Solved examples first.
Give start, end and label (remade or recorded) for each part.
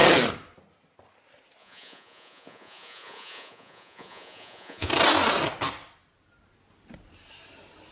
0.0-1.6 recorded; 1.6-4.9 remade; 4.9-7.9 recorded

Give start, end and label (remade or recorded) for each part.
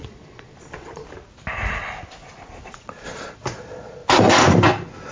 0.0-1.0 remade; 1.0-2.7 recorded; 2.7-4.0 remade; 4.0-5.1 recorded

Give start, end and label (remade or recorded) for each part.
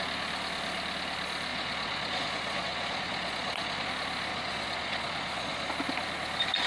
0.0-1.5 recorded; 1.5-3.9 remade; 3.9-4.3 recorded; 4.3-5.7 remade; 5.7-6.7 recorded